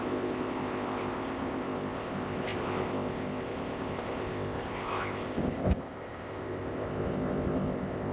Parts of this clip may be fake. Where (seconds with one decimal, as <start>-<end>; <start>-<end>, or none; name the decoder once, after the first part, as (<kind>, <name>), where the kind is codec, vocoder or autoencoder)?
0.0-8.1 (codec, ZipCodec)